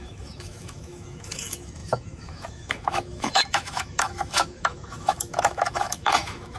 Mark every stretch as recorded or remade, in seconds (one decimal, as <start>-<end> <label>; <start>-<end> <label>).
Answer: 0.0-6.6 remade